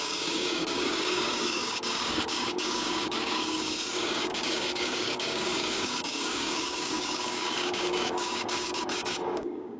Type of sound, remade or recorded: remade